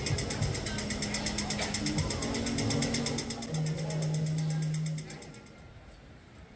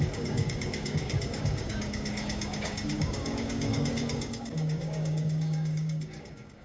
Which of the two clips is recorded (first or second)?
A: first